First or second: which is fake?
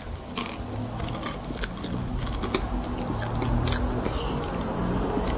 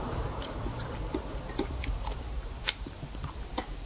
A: second